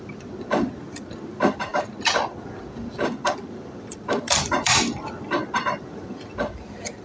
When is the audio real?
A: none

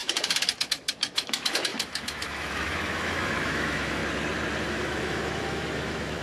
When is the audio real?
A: 4.0-4.6

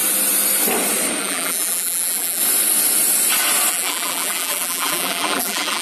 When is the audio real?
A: 0.0-1.2; 2.4-3.7

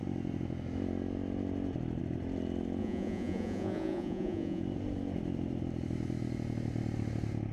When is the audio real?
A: 0.0-2.8; 4.6-7.5

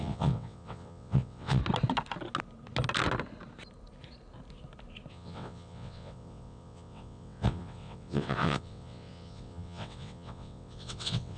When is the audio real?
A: 1.6-5.1